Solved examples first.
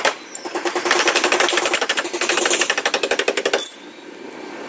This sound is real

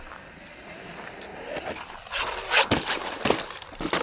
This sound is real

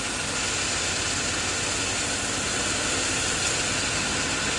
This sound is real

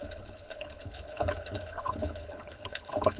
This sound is fake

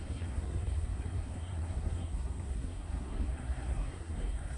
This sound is fake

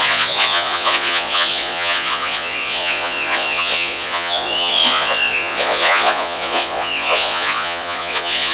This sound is fake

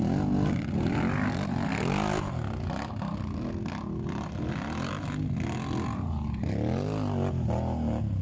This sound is real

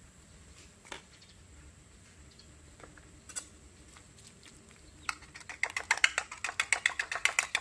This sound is real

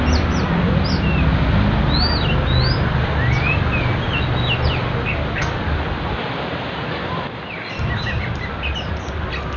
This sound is real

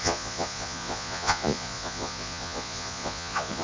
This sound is fake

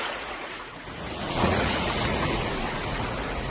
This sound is fake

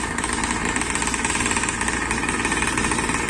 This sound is real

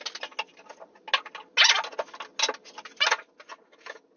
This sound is real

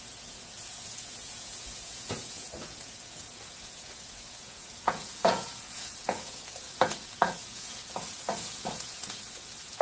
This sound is fake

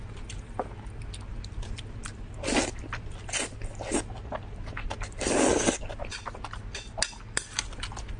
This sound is real